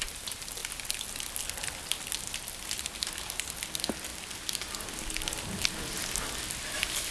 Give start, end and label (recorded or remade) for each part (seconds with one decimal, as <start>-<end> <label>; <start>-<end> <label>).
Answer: 0.0-7.1 recorded